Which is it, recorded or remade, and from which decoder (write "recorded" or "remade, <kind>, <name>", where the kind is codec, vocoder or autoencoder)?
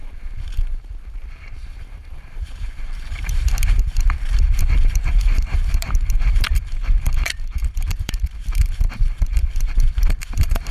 remade, vocoder, BigVGAN v2